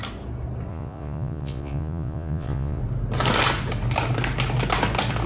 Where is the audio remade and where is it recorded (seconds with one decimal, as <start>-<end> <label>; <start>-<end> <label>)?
0.0-0.7 recorded; 0.7-2.8 remade; 2.8-5.3 recorded